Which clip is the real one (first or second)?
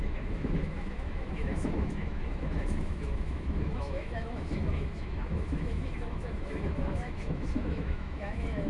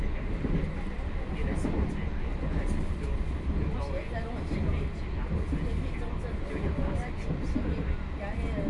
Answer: second